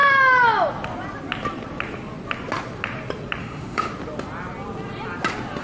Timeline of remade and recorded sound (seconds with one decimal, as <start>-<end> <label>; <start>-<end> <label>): 0.0-3.4 recorded; 3.4-3.9 remade; 3.9-5.6 recorded